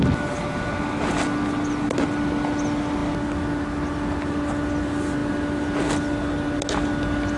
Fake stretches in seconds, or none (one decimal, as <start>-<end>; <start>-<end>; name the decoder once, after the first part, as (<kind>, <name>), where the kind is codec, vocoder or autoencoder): none